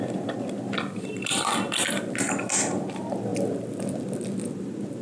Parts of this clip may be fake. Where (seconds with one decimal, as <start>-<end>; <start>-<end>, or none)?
none